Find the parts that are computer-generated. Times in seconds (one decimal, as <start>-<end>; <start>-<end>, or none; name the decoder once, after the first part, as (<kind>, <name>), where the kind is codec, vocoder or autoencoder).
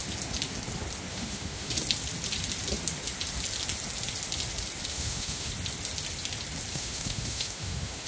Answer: 1.1-1.7 (autoencoder, DAC-VAE); 4.9-5.5; 6.7-8.1